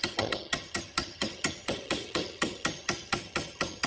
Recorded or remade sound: remade